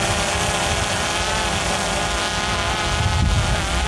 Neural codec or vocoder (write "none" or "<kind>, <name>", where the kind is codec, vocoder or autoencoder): none